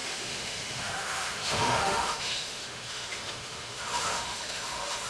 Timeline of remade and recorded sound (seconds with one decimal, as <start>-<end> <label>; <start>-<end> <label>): 0.0-5.1 remade